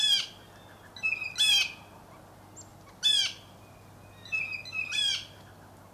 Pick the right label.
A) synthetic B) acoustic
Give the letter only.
B